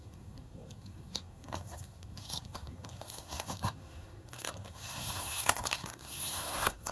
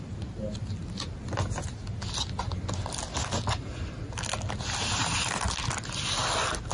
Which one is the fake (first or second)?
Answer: first